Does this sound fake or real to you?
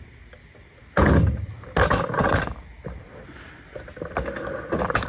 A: real